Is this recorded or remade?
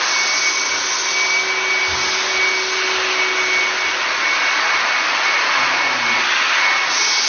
recorded